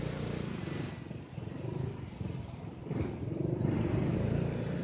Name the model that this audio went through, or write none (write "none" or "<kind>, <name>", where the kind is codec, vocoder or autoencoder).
none